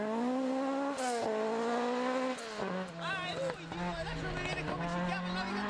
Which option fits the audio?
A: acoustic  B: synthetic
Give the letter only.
A